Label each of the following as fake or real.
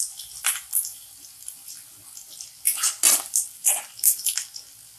real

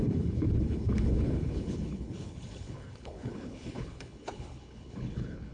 fake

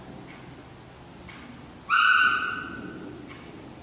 real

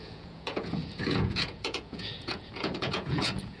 fake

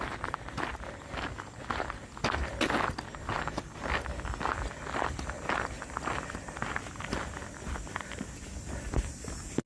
real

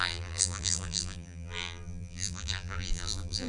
fake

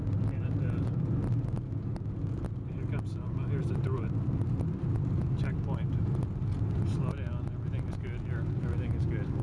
real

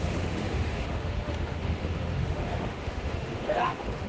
fake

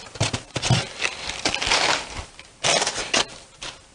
real